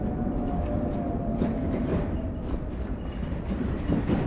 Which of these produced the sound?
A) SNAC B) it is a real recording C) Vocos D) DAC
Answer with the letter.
B